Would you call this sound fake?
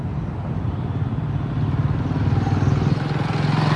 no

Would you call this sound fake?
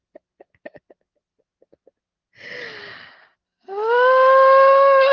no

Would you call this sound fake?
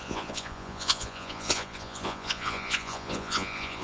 yes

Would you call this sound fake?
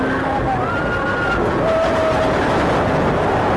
no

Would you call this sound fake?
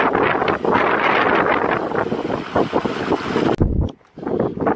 no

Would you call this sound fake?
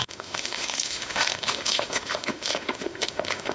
yes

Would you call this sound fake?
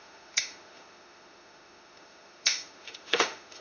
yes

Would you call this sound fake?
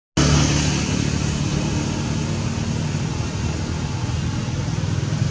no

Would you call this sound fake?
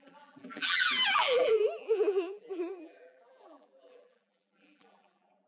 yes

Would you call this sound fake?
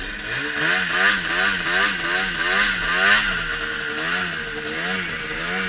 no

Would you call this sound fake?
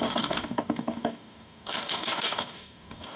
yes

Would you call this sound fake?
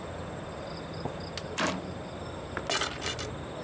no